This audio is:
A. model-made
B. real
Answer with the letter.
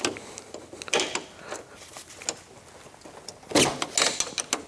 B